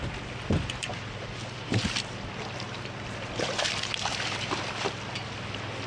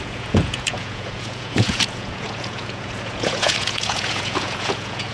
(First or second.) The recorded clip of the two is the first